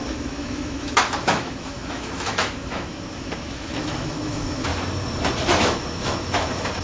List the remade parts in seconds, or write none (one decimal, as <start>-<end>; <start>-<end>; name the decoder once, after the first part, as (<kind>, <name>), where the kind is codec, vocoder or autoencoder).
0.0-4.7 (autoencoder, DAC-VAE); 5.5-6.8